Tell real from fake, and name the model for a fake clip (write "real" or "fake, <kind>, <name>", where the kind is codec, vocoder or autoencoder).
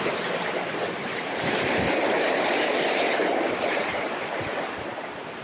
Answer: fake, vocoder, BigVGAN v2